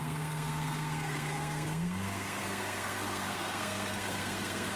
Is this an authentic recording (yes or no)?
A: no